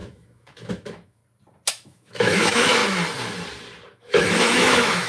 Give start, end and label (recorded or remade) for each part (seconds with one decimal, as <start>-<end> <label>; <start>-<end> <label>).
0.0-1.2 remade; 1.2-1.7 recorded; 1.7-2.8 remade; 2.8-3.9 recorded; 3.9-5.1 remade